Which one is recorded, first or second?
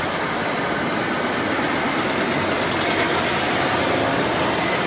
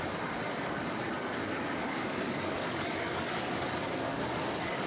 first